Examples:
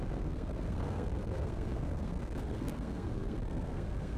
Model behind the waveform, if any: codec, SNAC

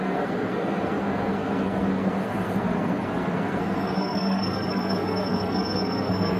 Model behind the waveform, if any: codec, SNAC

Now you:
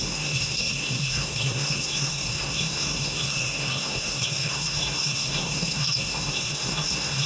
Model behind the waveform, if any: codec, SNAC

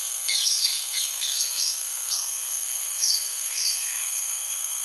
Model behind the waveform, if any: codec, SNAC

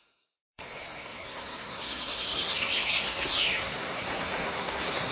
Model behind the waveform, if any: codec, SNAC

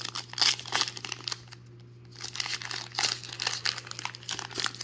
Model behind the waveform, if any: none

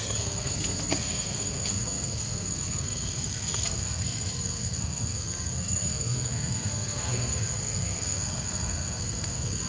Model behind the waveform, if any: codec, SNAC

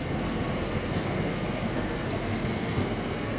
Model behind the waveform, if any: codec, SNAC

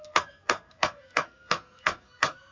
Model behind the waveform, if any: codec, SNAC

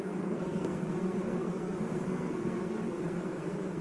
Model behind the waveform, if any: codec, SNAC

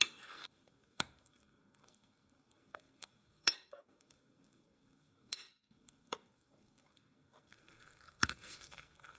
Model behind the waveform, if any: codec, SNAC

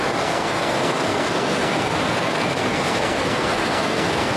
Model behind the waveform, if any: codec, SNAC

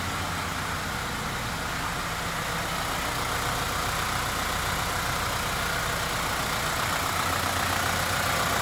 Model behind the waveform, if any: none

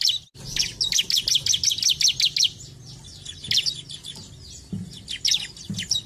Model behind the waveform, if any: none